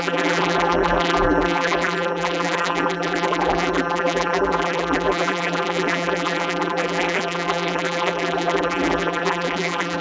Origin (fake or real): fake